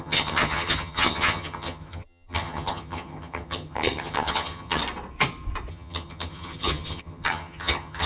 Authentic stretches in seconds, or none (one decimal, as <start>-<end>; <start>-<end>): 4.8-5.7